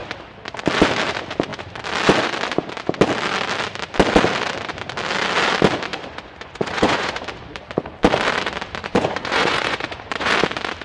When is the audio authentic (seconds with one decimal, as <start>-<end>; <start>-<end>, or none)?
0.0-5.9; 7.2-8.8; 10.3-10.8